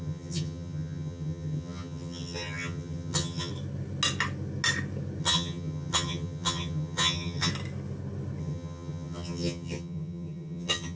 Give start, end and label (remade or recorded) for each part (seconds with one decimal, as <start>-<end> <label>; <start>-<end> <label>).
0.0-3.5 remade; 3.5-5.2 recorded; 5.2-7.5 remade; 7.5-8.4 recorded; 8.4-11.0 remade